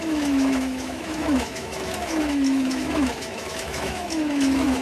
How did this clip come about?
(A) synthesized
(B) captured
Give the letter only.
A